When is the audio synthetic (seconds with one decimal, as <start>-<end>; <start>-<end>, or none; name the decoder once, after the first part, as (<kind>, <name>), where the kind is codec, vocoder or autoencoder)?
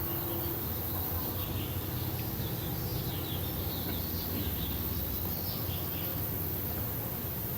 none